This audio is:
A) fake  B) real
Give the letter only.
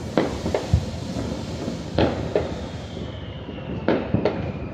A